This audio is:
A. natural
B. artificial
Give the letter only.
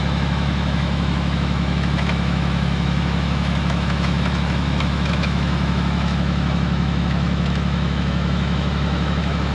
B